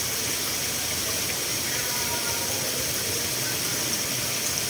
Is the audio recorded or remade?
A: recorded